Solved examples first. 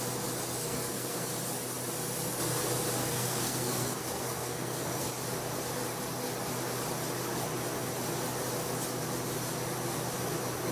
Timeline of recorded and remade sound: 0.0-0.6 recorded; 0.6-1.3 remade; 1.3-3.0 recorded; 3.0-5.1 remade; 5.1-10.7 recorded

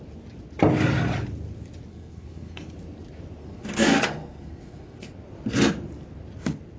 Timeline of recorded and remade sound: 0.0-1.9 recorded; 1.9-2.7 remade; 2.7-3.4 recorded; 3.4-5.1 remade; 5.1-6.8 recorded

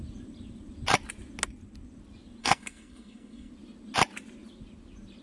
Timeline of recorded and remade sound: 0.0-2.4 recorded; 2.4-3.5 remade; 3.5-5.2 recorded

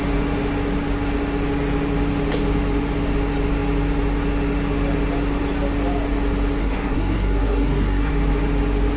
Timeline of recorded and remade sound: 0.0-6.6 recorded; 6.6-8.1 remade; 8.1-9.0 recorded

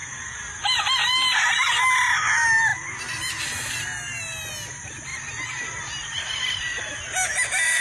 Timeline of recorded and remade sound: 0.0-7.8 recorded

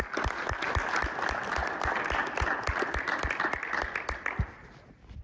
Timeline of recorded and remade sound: 0.0-5.2 recorded